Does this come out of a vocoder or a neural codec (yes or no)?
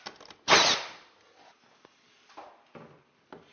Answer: no